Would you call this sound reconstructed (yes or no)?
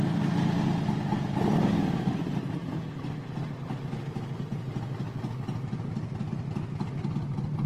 no